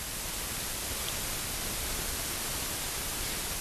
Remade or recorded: recorded